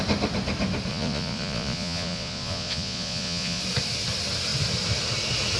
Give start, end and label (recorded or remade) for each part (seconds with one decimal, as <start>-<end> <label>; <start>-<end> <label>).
0.0-0.9 recorded; 0.9-3.6 remade; 3.6-5.6 recorded